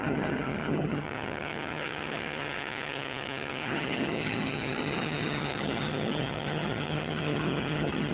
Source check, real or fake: fake